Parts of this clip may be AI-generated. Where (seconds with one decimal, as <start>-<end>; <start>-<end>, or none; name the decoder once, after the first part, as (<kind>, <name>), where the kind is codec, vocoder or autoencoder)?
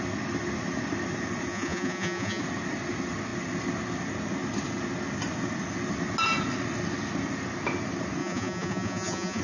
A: 1.5-2.4 (vocoder, Vocos); 8.2-9.4